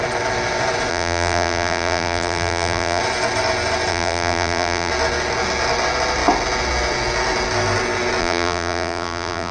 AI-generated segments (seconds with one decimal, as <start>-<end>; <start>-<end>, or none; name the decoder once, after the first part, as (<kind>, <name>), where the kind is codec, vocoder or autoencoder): 0.9-3.0 (vocoder, BigVGAN v2); 3.9-4.9; 8.2-9.5